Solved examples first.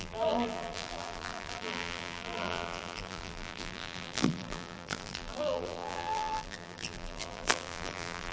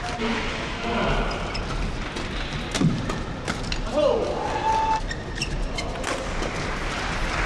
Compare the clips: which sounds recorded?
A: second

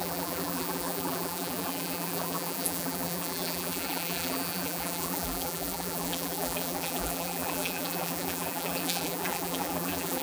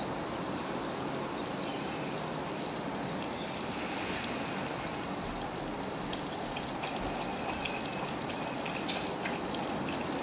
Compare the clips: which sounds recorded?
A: second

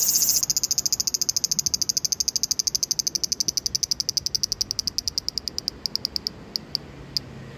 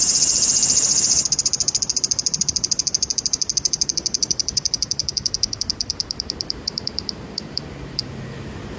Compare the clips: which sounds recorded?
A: first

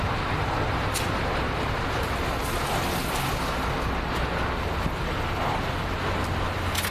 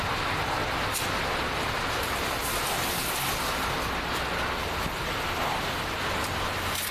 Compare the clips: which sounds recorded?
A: first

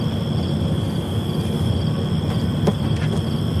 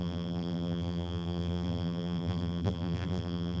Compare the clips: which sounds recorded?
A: first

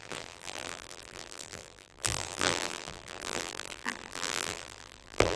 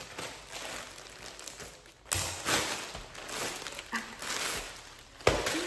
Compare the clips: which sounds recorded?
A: second